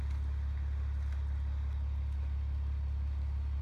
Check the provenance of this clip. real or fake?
real